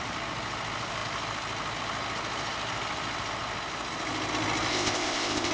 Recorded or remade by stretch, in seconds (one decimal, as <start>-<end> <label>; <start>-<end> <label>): 0.0-4.7 recorded; 4.7-5.5 remade